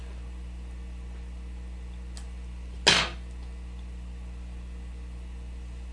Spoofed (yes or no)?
no